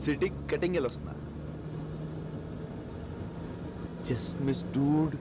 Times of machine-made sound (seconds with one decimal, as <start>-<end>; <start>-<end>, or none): none